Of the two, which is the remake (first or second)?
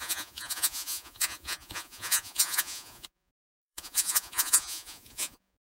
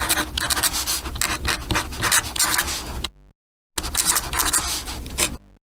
first